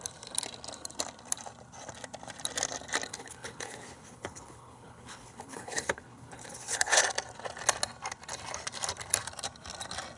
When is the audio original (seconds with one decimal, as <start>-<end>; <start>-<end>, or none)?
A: 0.0-3.1; 7.0-10.2